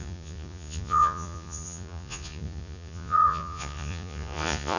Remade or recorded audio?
remade